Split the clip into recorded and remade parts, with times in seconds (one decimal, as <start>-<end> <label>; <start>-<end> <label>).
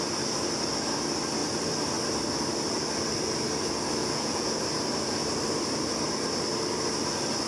0.0-4.0 recorded; 4.0-4.5 remade; 4.5-7.5 recorded